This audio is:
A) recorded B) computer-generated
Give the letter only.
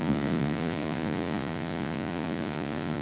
B